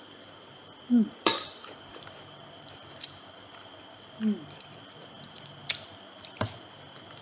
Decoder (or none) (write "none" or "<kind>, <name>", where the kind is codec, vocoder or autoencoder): vocoder, BigVGAN v2